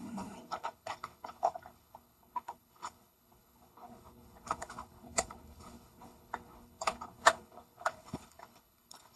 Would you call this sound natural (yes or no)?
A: no